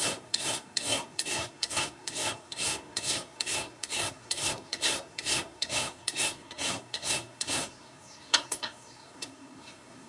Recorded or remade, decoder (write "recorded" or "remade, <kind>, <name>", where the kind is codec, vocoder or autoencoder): remade, codec, SNAC